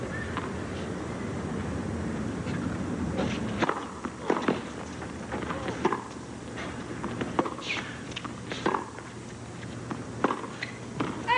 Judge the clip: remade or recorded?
recorded